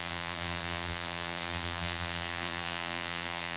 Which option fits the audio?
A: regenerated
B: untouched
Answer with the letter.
A